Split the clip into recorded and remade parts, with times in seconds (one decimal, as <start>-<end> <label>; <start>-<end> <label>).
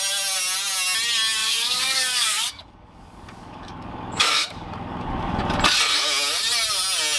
0.0-1.4 recorded; 1.4-5.4 remade; 5.4-7.2 recorded